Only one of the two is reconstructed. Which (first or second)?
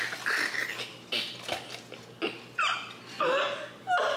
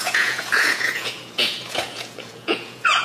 second